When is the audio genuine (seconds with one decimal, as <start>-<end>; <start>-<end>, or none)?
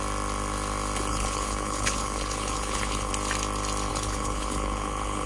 0.0-1.1; 3.1-3.9